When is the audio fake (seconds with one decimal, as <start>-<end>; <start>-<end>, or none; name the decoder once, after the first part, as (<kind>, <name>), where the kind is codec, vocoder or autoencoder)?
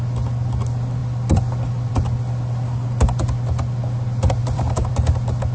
4.4-4.9 (vocoder, BigVGAN v2)